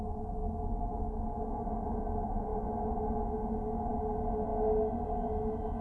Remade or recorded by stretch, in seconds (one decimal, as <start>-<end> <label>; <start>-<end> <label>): 0.0-5.8 recorded